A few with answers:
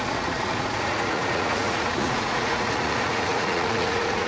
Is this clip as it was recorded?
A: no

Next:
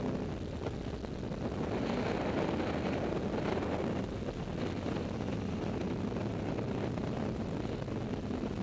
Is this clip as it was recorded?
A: yes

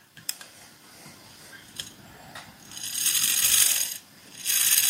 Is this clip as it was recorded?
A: no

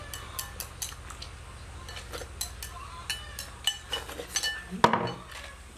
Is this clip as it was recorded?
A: yes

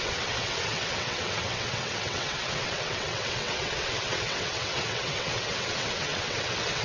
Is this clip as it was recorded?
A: no